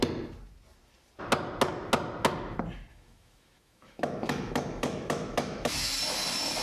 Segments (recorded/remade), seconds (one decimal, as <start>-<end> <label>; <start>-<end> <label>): 0.0-2.9 recorded; 2.9-5.9 remade; 5.9-6.6 recorded